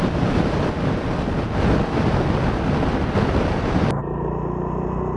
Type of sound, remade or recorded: recorded